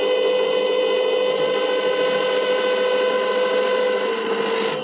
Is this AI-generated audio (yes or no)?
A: no